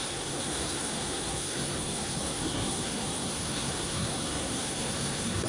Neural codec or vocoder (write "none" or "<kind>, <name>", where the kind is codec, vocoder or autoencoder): codec, SNAC